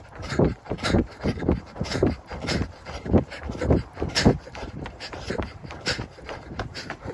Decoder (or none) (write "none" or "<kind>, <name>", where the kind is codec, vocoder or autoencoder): vocoder, BigVGAN v2